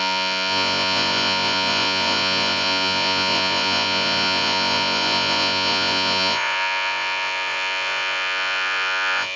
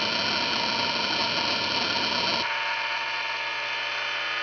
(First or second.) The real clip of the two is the second